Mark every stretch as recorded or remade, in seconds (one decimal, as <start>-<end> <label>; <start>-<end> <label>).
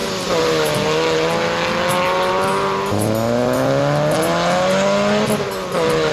0.0-6.1 recorded